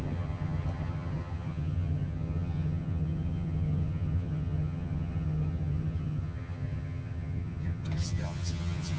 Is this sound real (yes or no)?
no